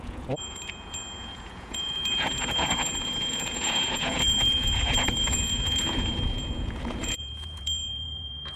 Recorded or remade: remade